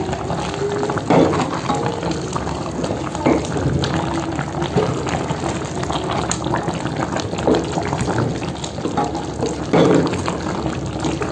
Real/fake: real